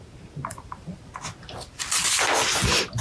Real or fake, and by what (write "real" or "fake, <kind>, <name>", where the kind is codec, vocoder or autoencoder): real